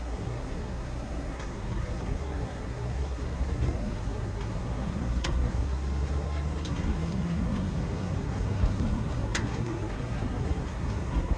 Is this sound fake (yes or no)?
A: yes